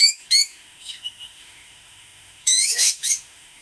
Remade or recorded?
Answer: remade